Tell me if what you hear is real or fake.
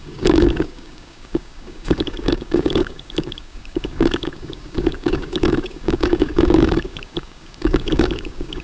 fake